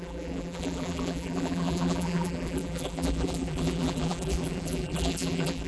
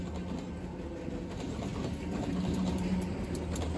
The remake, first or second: first